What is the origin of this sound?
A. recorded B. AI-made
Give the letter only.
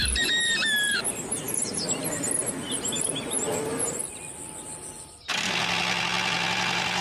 A